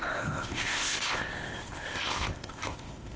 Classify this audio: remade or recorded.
remade